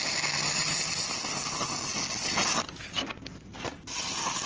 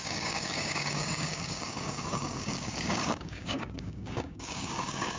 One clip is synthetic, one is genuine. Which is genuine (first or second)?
first